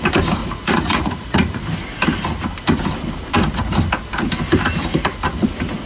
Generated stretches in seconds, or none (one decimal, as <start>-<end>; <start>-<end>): 0.4-1.6